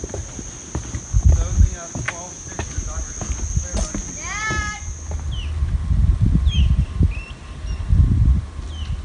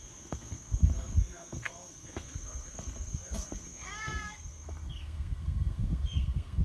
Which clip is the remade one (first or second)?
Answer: second